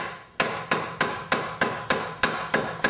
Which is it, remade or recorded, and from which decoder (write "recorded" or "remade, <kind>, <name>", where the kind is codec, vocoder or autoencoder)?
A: recorded